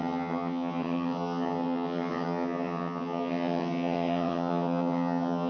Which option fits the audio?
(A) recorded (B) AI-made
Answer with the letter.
B